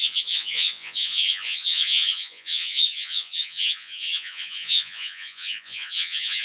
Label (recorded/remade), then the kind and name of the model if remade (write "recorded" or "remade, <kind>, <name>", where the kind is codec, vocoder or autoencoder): remade, vocoder, Vocos